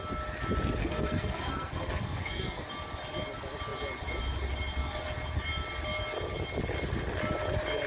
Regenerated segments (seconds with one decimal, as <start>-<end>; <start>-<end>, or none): 0.8-2.7